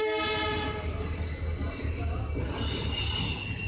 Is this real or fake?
real